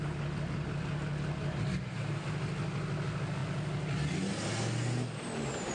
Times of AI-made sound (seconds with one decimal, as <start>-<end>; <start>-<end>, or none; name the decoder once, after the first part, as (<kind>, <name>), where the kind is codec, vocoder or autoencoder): none